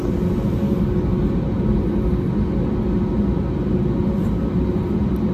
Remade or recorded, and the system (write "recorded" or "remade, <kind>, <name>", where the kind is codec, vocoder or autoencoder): recorded